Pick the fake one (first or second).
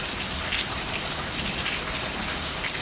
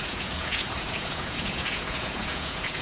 second